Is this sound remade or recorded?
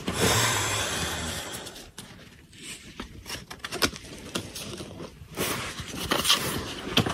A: remade